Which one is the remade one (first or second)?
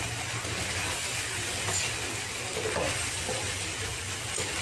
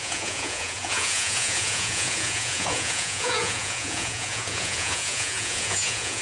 second